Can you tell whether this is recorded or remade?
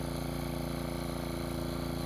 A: recorded